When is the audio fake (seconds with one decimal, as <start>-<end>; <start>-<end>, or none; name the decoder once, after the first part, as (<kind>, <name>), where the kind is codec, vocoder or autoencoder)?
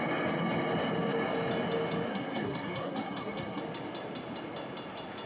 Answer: 2.1-3.6 (codec, SNAC)